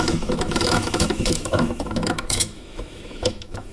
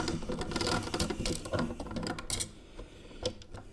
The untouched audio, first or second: second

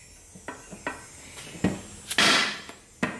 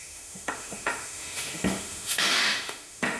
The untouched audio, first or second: first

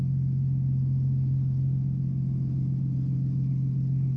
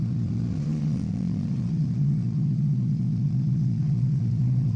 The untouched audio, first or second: first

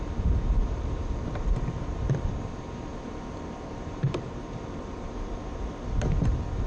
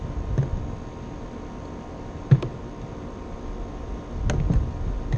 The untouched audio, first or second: second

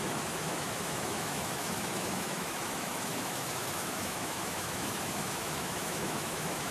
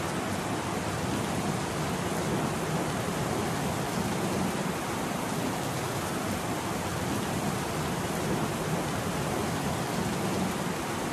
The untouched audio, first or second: second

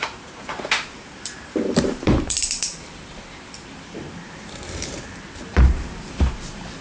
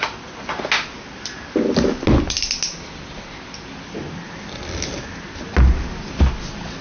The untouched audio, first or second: second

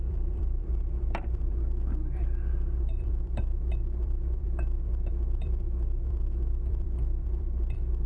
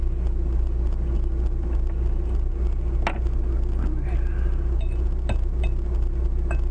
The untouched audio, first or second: second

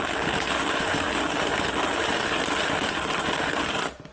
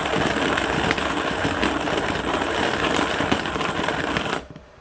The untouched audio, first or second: first